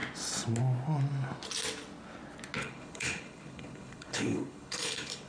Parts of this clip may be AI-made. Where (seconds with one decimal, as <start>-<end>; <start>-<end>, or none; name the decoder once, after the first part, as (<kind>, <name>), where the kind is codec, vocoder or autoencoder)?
2.6-5.3 (codec, HILCodec)